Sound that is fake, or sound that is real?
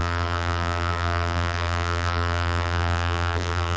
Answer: fake